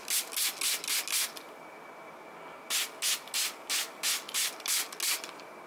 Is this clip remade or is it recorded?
recorded